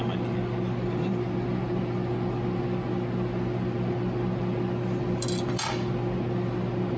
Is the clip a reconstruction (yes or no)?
no